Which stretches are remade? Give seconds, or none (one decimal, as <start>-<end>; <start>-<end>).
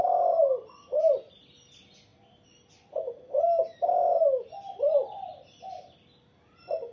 none